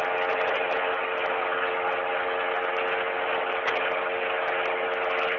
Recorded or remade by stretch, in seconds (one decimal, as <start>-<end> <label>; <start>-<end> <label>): 0.0-5.4 recorded